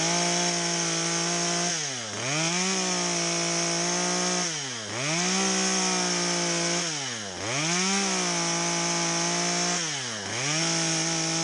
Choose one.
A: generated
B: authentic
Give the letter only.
B